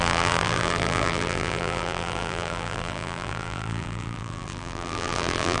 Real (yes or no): no